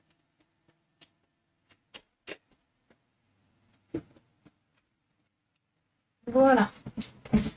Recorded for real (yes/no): yes